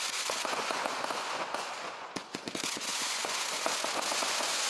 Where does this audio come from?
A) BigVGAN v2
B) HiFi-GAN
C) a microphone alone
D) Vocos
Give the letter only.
D